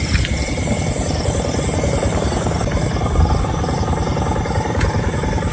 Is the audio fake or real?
fake